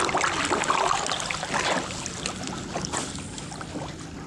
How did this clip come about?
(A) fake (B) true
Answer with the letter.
B